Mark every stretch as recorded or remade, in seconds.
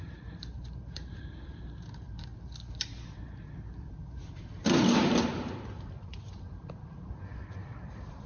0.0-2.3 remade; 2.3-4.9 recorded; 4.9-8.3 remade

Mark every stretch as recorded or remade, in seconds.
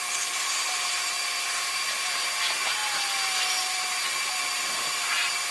0.0-5.5 recorded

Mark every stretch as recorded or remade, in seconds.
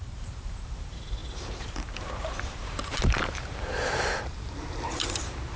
0.0-5.6 remade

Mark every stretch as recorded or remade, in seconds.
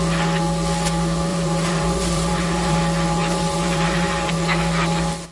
0.0-1.3 recorded; 1.3-2.8 remade; 2.8-3.2 recorded; 3.2-4.3 remade; 4.3-5.3 recorded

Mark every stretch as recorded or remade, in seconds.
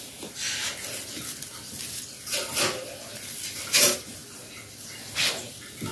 0.0-5.9 recorded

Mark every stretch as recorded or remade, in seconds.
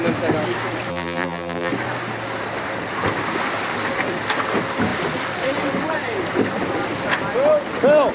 0.0-0.9 recorded; 0.9-1.7 remade; 1.7-8.1 recorded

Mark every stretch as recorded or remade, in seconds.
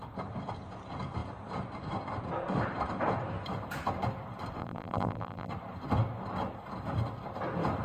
0.0-4.6 recorded; 4.6-5.5 remade; 5.5-7.8 recorded